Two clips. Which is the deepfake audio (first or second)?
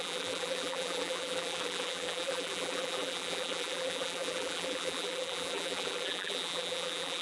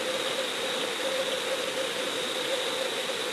first